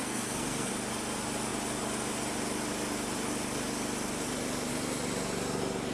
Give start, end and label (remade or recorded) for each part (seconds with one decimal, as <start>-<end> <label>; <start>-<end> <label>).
0.0-0.7 remade; 0.7-5.9 recorded